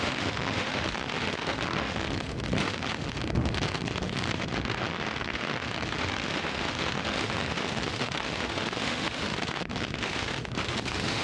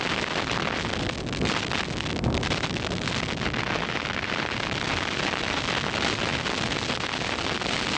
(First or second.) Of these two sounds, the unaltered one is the second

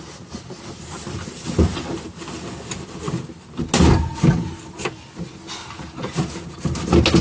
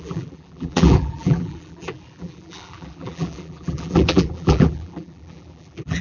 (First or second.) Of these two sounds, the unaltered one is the first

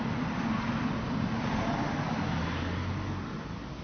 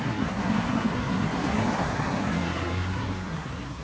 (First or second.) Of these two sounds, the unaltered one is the first